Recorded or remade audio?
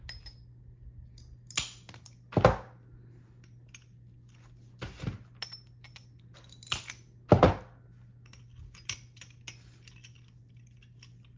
recorded